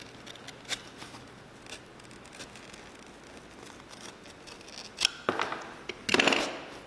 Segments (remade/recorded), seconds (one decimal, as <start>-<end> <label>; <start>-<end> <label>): 0.0-6.9 recorded